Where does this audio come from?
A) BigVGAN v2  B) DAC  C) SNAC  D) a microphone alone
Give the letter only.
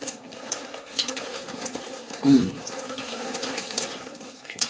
C